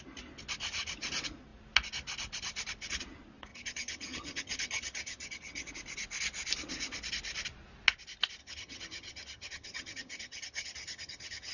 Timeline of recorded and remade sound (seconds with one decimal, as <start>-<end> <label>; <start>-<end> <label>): 0.0-3.5 recorded; 3.5-5.7 remade; 5.7-8.4 recorded; 8.4-11.5 remade